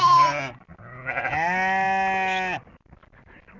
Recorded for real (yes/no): yes